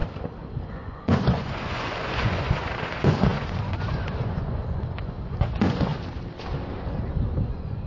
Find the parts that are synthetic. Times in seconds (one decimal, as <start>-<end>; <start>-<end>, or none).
0.6-5.9; 7.5-7.9